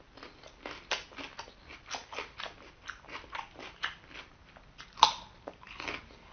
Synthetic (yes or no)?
no